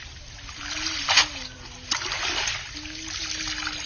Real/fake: real